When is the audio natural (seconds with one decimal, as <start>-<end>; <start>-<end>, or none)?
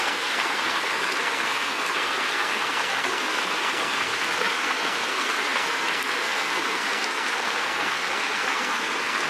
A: none